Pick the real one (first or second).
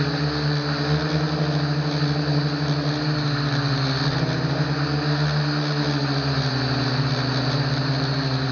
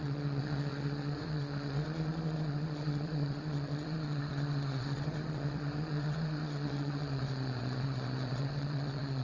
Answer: first